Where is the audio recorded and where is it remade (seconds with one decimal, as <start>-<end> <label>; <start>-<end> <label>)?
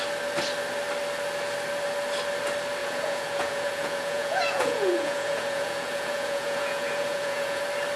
0.0-2.8 recorded; 2.8-7.6 remade; 7.6-8.0 recorded